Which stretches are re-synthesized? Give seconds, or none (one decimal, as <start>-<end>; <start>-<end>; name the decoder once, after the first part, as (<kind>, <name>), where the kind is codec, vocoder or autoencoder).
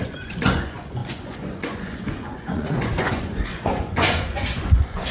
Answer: 0.0-5.1 (vocoder, Vocos)